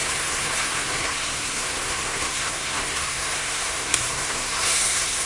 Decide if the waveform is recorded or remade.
remade